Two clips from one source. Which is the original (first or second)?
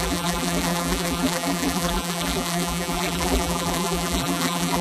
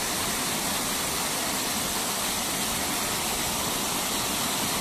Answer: second